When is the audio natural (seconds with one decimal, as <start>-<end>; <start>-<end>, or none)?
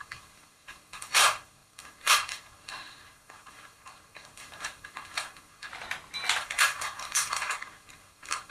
5.7-6.4